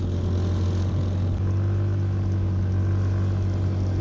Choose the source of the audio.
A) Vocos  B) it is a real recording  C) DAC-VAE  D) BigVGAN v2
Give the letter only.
B